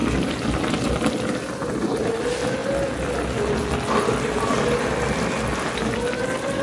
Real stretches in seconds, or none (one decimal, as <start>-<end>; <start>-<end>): 0.0-6.6